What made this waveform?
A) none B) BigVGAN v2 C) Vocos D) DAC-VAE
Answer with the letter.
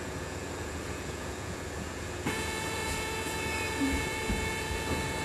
C